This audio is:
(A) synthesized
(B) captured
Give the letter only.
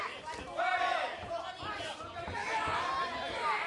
B